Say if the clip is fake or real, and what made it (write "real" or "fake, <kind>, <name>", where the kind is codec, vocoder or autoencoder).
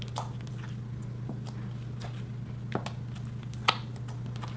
real